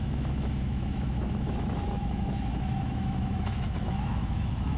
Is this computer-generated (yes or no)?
yes